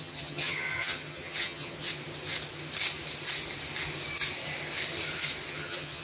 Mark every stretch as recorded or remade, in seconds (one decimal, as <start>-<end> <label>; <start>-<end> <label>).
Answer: 0.0-1.9 remade; 1.9-5.5 recorded; 5.5-6.0 remade